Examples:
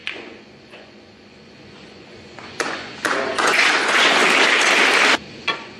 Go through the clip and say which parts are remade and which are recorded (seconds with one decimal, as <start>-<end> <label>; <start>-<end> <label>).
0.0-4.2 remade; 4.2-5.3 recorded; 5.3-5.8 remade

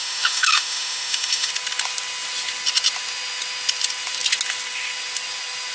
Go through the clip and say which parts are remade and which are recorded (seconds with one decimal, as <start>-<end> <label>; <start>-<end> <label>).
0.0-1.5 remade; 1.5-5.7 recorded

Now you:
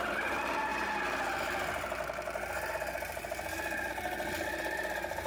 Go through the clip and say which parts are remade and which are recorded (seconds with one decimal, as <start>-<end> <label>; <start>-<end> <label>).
0.0-5.3 recorded